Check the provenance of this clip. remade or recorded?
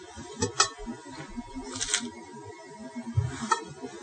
recorded